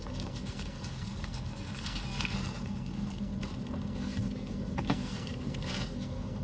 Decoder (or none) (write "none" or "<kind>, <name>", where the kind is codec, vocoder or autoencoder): codec, SNAC